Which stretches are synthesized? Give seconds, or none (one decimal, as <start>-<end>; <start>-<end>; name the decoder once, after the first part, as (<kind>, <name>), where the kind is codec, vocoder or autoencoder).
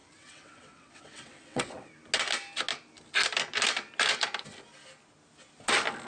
0.0-1.9 (vocoder, WaveNeXt)